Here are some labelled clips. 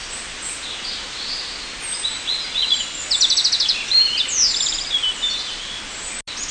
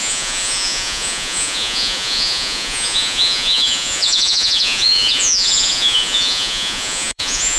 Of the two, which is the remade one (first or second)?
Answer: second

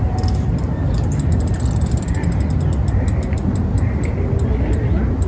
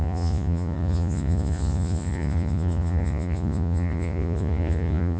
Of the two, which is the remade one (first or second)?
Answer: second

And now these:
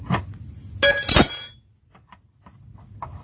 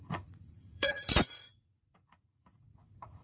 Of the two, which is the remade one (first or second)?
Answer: second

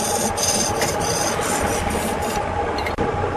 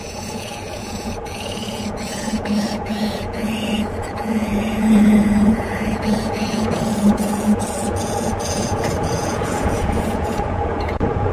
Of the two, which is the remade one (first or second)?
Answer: second